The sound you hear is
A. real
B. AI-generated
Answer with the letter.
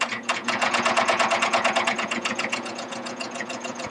B